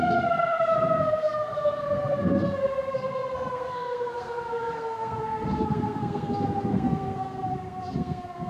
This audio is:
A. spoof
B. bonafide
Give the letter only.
A